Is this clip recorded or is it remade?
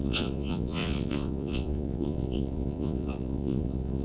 remade